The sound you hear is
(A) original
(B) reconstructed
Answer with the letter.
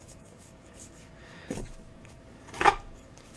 B